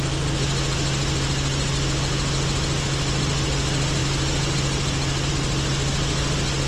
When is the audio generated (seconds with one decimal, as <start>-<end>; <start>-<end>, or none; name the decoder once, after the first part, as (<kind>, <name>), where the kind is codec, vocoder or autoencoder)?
none